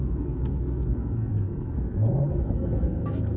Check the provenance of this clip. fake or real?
fake